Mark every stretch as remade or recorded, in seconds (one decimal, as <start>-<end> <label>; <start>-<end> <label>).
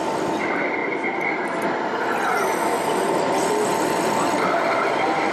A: 0.0-5.3 recorded